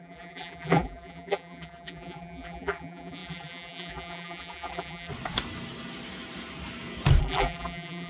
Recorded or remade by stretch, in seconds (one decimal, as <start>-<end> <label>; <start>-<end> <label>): 0.0-5.1 remade; 5.1-7.2 recorded; 7.2-8.1 remade